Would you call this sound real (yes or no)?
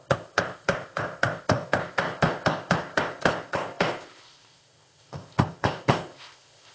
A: no